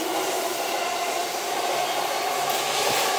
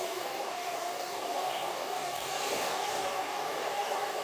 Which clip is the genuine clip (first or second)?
first